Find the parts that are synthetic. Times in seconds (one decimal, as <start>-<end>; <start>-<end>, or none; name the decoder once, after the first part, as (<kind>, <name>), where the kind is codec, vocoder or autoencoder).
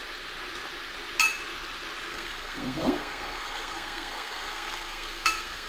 2.1-5.7 (codec, SNAC)